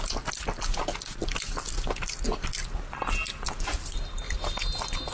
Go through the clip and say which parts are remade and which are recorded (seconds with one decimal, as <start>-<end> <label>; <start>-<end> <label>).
0.0-5.1 recorded